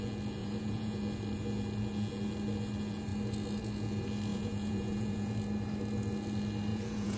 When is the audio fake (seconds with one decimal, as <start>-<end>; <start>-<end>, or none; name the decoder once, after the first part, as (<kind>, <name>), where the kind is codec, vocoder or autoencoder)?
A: 0.4-1.0 (vocoder, Vocos); 4.3-5.3; 6.7-7.2